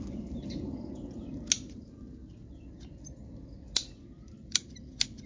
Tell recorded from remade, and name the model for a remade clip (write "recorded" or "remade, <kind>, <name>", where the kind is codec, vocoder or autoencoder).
recorded